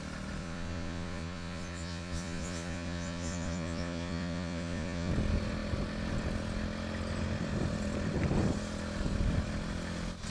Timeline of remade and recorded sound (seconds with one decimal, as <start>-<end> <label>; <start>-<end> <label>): 0.0-0.4 recorded; 0.4-5.1 remade; 5.1-10.3 recorded